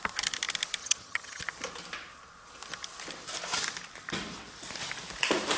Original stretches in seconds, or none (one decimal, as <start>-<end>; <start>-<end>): 0.0-0.8; 1.4-5.6